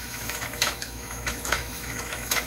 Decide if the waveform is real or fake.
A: fake